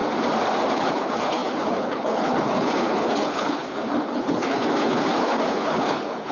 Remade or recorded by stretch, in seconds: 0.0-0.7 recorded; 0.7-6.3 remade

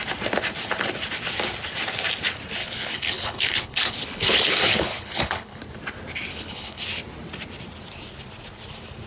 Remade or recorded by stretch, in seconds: 0.0-2.6 recorded; 2.6-5.6 remade; 5.6-6.3 recorded; 6.3-6.8 remade; 6.8-9.1 recorded

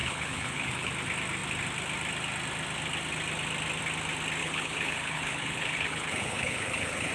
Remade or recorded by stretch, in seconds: 0.0-0.9 remade; 0.9-4.4 recorded; 4.4-7.1 remade

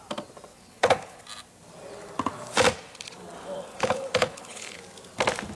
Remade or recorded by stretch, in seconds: 0.0-0.5 recorded; 0.5-1.2 remade; 1.2-3.7 recorded; 3.7-4.8 remade; 4.8-5.5 recorded

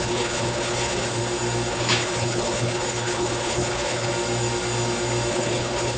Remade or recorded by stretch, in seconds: 0.0-1.2 remade; 1.2-1.7 recorded; 1.7-4.1 remade; 4.1-5.3 recorded; 5.3-6.0 remade

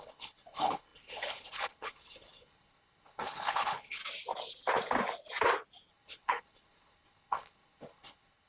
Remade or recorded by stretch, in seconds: 0.0-4.0 remade; 4.0-5.9 recorded; 5.9-8.5 remade